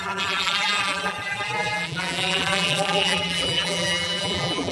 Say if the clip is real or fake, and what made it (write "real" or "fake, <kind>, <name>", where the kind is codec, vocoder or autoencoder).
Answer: fake, vocoder, BigVGAN v2